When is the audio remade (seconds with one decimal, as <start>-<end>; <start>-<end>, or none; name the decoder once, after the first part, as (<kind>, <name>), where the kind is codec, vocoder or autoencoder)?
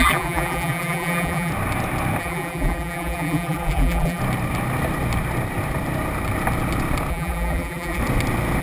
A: 0.0-1.5 (vocoder, BigVGAN v2); 2.2-4.2; 7.1-8.0